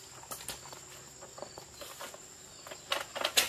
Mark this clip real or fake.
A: real